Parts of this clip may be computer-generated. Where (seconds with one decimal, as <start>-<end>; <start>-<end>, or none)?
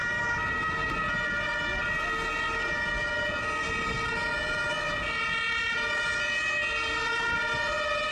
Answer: none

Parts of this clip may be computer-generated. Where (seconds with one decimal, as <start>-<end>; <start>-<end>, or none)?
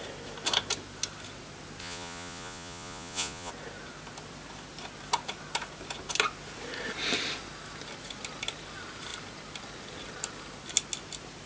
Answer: 1.8-3.5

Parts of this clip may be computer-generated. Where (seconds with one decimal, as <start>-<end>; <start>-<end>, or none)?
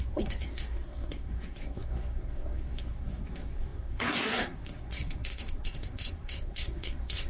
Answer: 0.0-7.3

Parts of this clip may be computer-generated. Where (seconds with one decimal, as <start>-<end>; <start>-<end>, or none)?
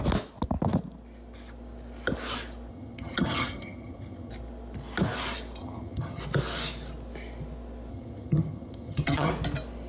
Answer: 2.7-4.3; 5.6-6.2; 7.9-9.3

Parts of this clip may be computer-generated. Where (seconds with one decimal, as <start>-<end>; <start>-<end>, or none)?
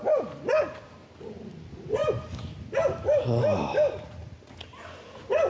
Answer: none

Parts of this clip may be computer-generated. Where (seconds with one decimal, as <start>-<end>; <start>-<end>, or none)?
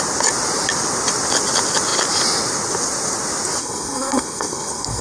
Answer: 3.6-5.0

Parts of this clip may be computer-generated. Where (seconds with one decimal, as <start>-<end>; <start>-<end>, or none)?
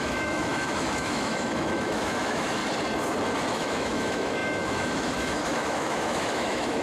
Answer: 0.0-2.6; 3.5-6.8